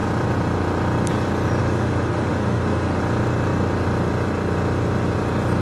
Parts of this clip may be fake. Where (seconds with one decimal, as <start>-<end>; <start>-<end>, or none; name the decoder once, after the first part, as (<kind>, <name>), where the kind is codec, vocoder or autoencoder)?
1.6-3.0 (autoencoder, DAC-VAE)